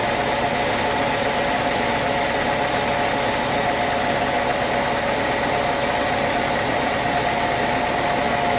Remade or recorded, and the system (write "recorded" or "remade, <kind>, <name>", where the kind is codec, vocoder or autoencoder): recorded